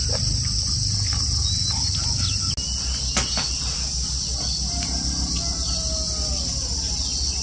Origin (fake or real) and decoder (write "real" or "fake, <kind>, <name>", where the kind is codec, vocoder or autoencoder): real